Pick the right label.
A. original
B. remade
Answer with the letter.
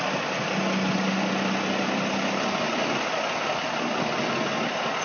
A